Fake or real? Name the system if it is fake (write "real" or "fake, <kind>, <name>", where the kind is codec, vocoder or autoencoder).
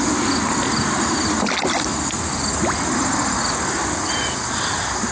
real